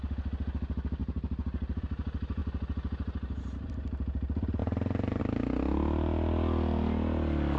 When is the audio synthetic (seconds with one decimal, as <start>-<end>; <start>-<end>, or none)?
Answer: 1.0-1.8; 2.4-3.7; 4.6-5.2

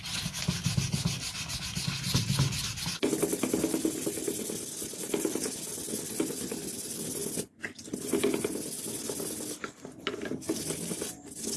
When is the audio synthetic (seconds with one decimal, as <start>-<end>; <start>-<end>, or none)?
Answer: none

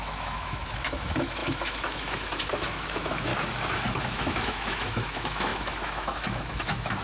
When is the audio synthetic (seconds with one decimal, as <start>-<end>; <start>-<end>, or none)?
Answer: 0.0-3.3; 4.0-7.0

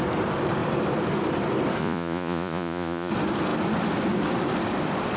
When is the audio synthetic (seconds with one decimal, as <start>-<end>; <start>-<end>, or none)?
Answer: 1.8-3.1

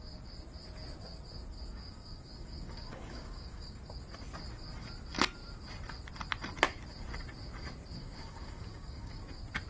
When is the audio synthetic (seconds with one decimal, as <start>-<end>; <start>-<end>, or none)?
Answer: 1.7-3.8; 8.0-9.2

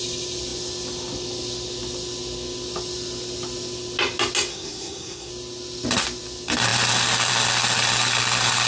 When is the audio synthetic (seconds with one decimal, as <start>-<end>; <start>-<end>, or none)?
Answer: 4.5-5.3